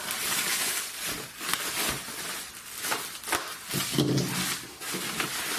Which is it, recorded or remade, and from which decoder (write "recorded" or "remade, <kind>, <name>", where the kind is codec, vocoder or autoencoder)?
recorded